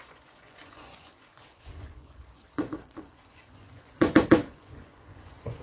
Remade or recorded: remade